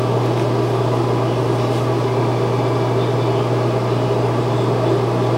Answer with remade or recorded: recorded